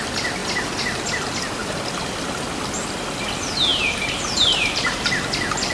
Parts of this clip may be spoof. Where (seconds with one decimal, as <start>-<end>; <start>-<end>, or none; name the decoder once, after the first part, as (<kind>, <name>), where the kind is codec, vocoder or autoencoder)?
3.7-5.1 (vocoder, BigVGAN v2)